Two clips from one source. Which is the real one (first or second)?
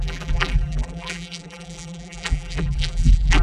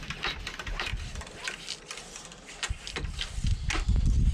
second